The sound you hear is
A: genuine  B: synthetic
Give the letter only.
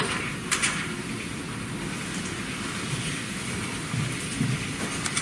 A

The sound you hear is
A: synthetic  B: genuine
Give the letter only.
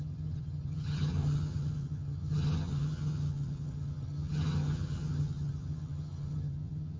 A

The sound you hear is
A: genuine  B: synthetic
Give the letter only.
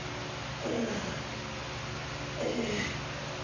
A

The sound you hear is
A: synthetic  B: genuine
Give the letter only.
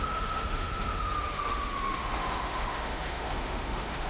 A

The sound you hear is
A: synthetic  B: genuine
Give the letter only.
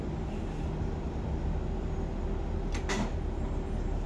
B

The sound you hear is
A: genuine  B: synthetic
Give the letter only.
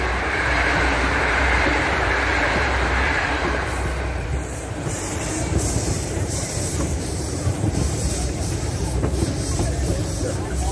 B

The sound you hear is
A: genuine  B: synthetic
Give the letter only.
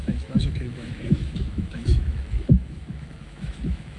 B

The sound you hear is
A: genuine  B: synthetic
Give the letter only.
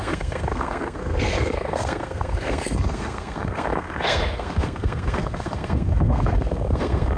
B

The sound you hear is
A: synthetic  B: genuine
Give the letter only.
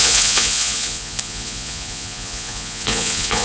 A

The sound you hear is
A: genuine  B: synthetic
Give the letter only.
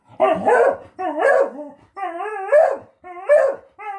A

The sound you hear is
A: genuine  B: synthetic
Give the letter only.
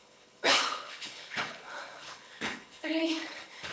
B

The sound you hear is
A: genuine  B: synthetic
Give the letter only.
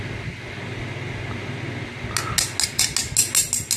A